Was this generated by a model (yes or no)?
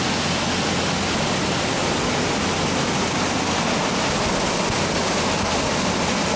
no